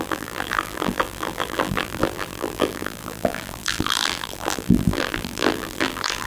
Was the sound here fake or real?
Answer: fake